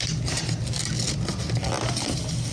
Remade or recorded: recorded